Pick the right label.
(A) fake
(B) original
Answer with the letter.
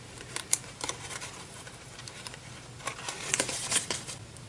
A